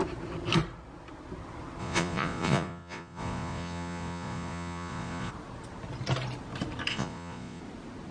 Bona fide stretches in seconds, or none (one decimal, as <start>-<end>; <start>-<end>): 0.0-1.8; 5.3-6.9; 7.6-8.1